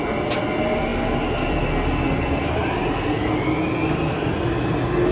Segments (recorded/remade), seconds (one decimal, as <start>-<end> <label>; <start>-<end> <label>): 0.0-5.1 recorded

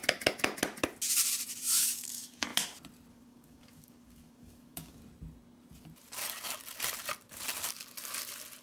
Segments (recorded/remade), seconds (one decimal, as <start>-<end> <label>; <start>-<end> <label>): 0.0-1.8 recorded; 1.8-2.5 remade; 2.5-3.1 recorded; 3.1-5.0 remade; 5.0-8.6 recorded

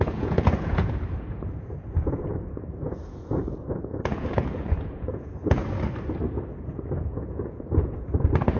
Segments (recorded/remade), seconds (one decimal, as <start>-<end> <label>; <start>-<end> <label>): 0.0-5.6 remade; 5.6-6.6 recorded; 6.6-8.6 remade

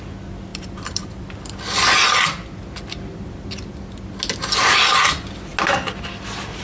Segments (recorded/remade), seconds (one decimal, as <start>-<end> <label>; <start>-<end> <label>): 0.0-0.5 recorded; 0.5-1.3 remade; 1.3-6.6 recorded

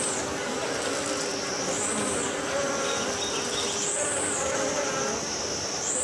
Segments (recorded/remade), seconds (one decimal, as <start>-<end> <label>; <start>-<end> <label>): 0.0-6.0 recorded

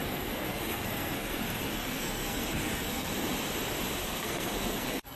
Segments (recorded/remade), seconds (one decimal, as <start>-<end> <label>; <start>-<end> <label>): 0.0-3.1 remade; 3.1-4.0 recorded; 4.0-5.2 remade